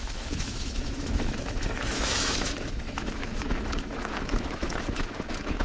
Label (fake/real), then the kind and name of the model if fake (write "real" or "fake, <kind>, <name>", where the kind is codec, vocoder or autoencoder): fake, autoencoder, DAC-VAE